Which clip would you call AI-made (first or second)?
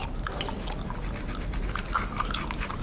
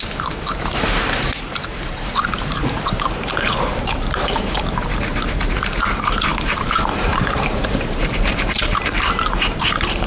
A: second